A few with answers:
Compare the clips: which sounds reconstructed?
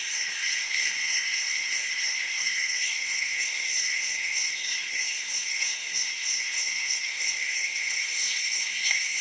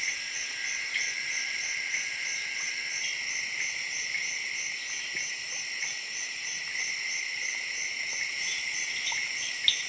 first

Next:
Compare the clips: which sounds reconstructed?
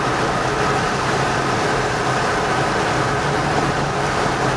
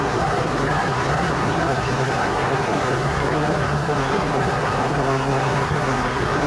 second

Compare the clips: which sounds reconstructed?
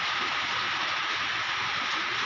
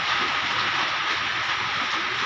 first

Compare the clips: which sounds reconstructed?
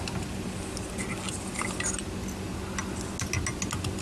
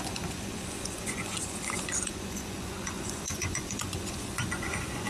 second